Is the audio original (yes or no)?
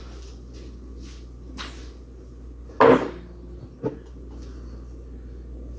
yes